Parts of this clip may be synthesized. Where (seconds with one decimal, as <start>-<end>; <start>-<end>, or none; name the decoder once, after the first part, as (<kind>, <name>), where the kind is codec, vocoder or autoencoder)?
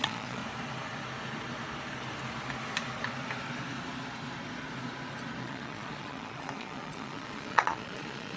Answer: 0.0-0.4 (vocoder, Vocos); 5.4-8.4